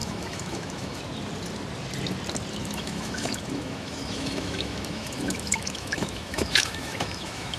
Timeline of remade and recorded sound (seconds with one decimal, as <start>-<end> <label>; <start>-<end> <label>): 0.0-1.0 remade; 1.0-2.6 recorded; 2.6-7.6 remade